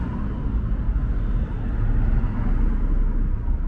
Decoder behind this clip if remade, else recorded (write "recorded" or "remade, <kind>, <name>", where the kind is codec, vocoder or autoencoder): recorded